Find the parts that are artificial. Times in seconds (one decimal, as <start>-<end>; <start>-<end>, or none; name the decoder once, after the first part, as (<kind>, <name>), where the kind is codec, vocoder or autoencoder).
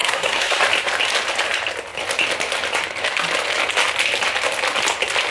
0.0-0.6 (codec, SNAC)